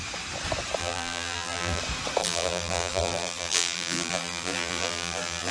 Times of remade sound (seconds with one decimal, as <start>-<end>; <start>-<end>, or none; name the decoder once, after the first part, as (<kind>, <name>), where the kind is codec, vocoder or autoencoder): 0.8-1.8 (vocoder, BigVGAN v2); 2.2-5.5